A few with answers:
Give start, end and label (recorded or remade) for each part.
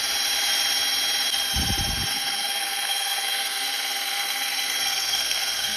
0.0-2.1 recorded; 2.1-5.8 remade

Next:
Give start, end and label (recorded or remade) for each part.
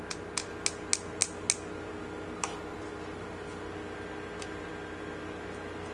0.0-5.9 recorded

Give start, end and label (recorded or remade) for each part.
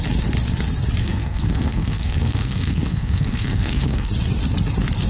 0.0-1.0 recorded; 1.0-4.1 remade; 4.1-5.1 recorded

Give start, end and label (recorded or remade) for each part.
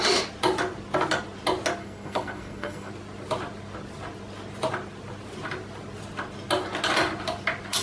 0.0-1.8 recorded; 1.8-2.9 remade; 2.9-7.8 recorded